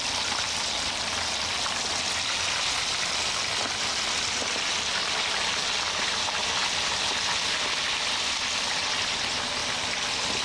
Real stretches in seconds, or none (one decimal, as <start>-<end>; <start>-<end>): 0.0-10.4